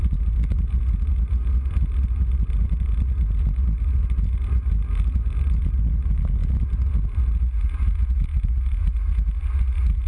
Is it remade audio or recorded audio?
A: recorded